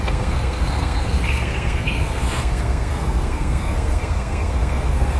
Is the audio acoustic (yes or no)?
no